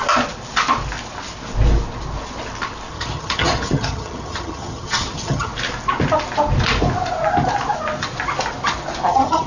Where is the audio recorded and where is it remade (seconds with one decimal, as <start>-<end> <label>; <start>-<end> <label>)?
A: 0.0-2.9 recorded; 2.9-5.5 remade; 5.5-9.1 recorded; 9.1-9.5 remade